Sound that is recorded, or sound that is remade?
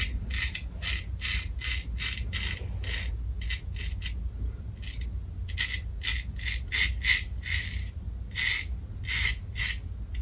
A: recorded